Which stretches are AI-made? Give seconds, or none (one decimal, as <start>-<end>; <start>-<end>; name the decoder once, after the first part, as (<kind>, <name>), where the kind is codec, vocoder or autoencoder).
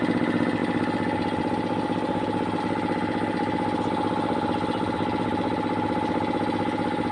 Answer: none